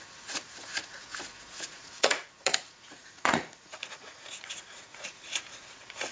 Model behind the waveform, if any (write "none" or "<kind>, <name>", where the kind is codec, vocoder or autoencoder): vocoder, Vocos